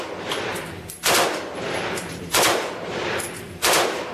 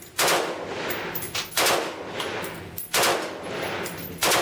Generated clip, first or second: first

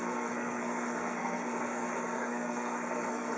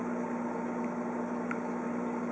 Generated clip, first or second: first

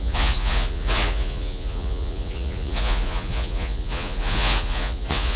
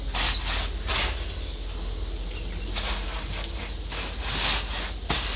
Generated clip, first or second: first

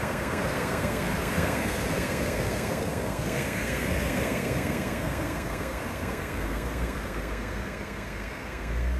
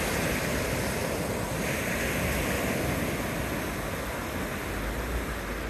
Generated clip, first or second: first